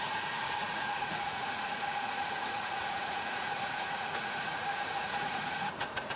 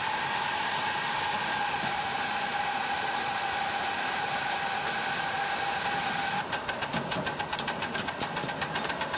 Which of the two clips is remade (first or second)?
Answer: first